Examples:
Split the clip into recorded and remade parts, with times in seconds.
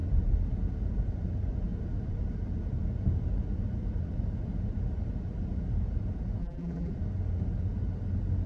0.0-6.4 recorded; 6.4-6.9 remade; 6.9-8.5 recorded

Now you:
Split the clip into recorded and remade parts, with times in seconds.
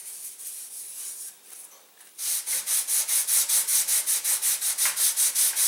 0.0-5.7 recorded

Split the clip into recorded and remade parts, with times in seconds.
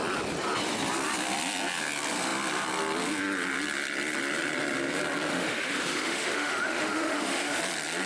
0.0-5.3 recorded; 5.3-7.6 remade; 7.6-8.1 recorded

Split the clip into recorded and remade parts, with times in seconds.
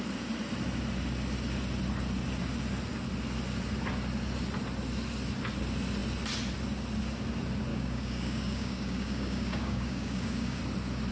0.0-7.7 recorded; 7.7-10.6 remade; 10.6-11.1 recorded